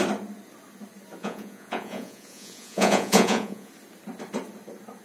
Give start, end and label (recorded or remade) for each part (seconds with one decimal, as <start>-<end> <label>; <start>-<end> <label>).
0.0-1.2 recorded; 1.2-3.7 remade; 3.7-5.0 recorded